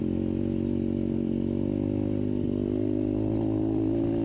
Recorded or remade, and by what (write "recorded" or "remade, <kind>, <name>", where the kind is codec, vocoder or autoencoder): recorded